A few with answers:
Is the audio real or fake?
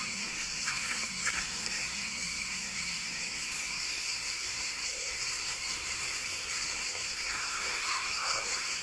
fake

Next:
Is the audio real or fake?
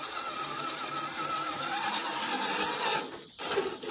real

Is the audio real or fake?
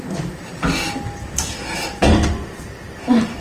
real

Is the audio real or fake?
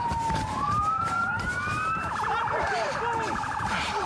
fake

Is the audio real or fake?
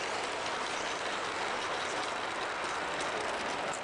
real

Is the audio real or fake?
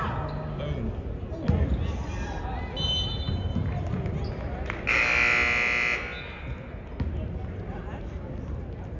real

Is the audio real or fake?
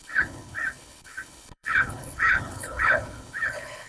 fake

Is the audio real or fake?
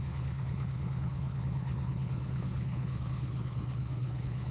fake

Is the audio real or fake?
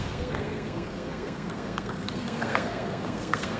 fake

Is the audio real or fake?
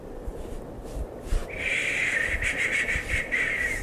fake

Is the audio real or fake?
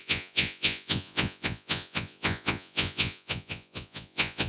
fake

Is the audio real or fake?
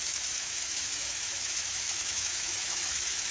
fake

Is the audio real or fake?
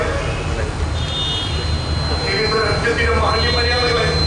real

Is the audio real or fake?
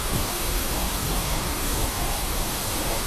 fake